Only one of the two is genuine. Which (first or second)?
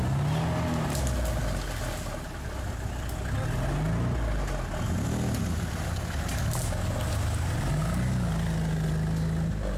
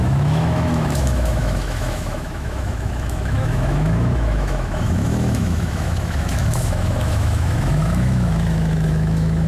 first